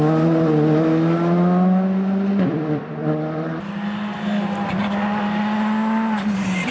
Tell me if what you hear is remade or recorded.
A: recorded